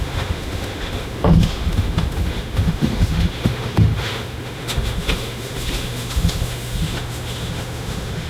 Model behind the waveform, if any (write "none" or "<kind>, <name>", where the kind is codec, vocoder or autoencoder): autoencoder, DAC-VAE